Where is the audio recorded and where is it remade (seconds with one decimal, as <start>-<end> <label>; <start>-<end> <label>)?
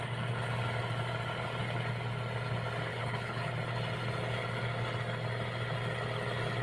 0.0-2.9 recorded; 2.9-3.5 remade; 3.5-6.6 recorded